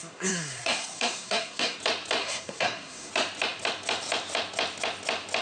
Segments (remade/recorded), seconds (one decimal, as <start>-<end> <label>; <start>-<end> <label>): 0.0-1.8 remade; 1.8-2.2 recorded; 2.2-3.1 remade; 3.1-5.4 recorded